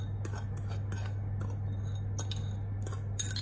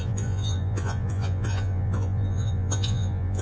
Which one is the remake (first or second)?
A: second